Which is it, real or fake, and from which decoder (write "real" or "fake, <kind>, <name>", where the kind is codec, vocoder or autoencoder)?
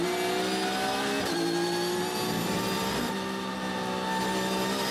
real